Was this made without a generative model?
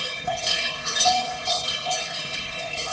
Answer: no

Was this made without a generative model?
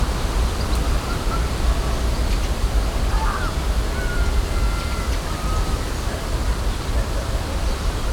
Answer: no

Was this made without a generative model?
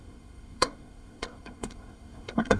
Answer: no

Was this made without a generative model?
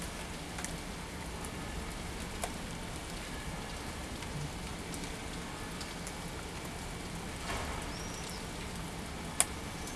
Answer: yes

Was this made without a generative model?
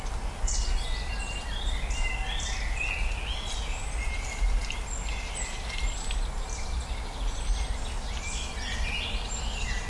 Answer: yes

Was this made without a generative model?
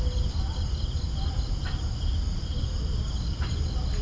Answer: yes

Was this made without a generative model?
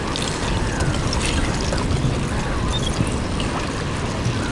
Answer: yes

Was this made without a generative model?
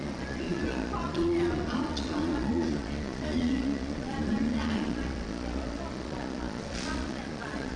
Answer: no